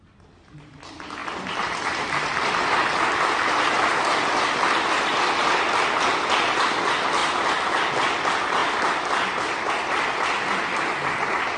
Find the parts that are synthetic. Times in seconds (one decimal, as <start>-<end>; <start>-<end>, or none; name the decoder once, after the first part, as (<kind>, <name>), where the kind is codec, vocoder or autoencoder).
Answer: 7.2-7.9 (vocoder, BigVGAN v2); 8.6-9.7